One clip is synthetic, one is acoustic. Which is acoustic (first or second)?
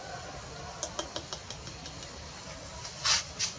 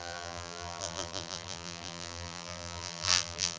first